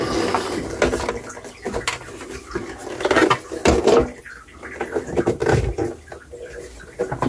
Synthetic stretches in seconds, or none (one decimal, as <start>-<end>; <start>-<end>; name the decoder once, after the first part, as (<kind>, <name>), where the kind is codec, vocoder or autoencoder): none